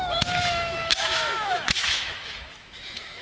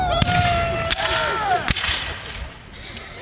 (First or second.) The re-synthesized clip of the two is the first